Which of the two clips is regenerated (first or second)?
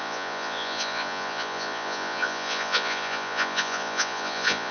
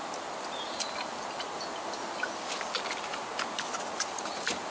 first